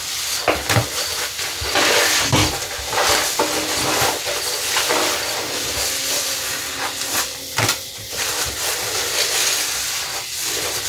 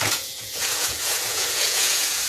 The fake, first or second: second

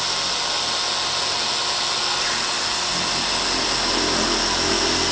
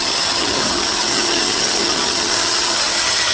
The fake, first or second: second